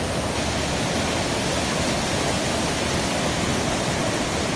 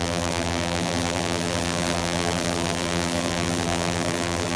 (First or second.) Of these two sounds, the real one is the first